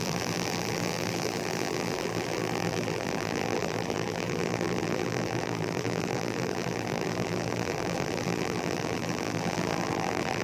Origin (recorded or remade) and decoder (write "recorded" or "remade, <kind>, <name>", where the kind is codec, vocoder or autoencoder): remade, vocoder, BigVGAN v2